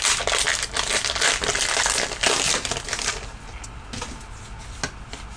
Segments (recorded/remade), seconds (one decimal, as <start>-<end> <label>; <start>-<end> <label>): 0.0-5.4 recorded